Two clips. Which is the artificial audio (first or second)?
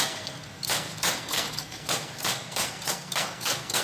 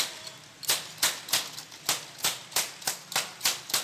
first